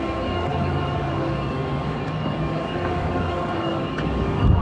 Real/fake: fake